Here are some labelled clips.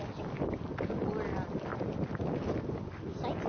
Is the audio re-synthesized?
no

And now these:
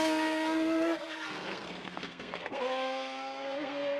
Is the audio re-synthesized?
yes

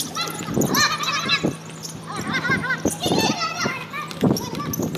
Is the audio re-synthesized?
no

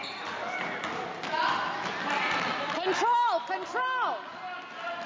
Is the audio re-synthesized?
no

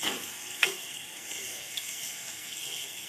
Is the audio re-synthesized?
yes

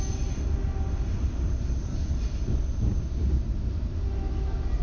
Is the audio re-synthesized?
no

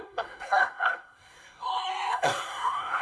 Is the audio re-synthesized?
yes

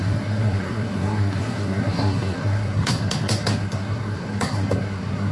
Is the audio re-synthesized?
yes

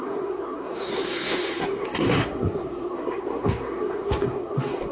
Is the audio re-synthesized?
yes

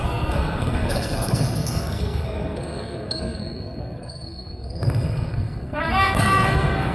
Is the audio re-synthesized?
yes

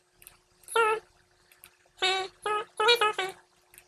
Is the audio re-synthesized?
no